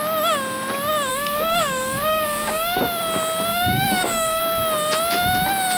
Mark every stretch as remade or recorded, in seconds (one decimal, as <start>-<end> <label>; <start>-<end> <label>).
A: 0.0-1.1 recorded; 1.1-2.8 remade; 2.8-3.5 recorded; 3.5-4.4 remade; 4.4-5.8 recorded